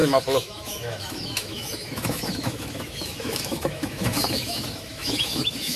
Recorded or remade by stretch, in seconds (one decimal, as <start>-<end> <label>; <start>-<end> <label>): 0.0-5.8 remade